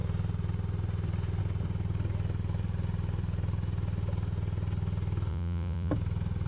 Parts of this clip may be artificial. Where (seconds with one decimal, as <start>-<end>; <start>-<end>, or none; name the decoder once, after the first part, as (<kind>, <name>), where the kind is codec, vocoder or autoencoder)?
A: 5.3-5.9 (vocoder, Vocos)